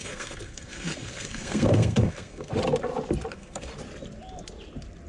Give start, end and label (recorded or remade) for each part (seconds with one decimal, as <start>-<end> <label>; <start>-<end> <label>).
0.0-2.5 remade; 2.5-3.3 recorded; 3.3-3.7 remade; 3.7-5.1 recorded